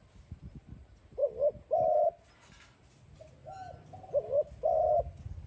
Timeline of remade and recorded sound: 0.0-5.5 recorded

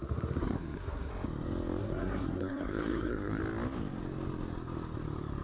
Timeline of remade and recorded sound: 0.0-1.1 remade; 1.1-1.8 recorded; 1.8-3.4 remade; 3.4-5.4 recorded

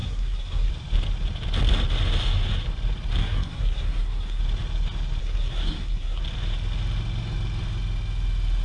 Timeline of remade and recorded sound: 0.0-0.7 remade; 0.7-3.2 recorded; 3.2-4.4 remade; 4.4-5.2 recorded; 5.2-6.2 remade; 6.2-8.6 recorded

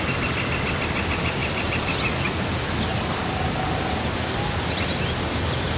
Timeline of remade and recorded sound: 0.0-5.8 recorded

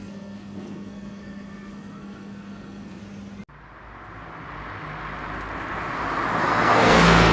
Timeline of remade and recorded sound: 0.0-3.0 remade; 3.0-6.4 recorded; 6.4-7.3 remade